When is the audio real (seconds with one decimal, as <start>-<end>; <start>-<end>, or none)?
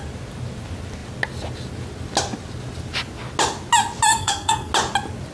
0.0-4.1; 4.7-5.3